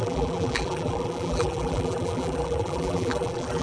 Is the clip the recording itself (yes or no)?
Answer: no